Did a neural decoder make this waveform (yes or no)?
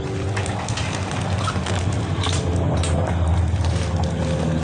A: no